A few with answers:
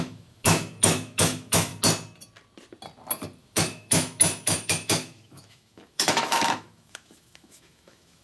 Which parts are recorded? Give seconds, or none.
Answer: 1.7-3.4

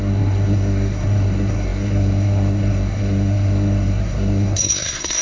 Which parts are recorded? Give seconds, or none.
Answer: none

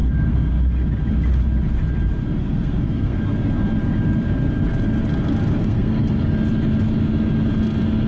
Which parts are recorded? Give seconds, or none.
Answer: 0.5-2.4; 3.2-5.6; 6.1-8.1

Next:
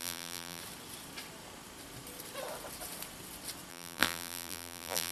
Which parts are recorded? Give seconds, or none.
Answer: 0.6-3.7

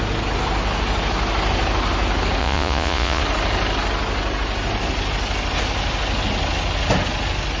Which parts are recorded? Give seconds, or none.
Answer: 0.0-2.4; 3.2-7.6

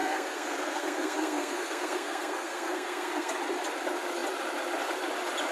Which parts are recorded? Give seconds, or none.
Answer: 3.3-5.5

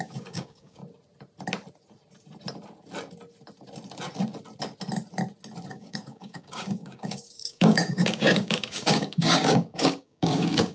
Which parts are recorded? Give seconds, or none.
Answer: 0.8-5.7